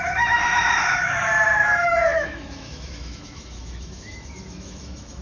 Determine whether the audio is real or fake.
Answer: fake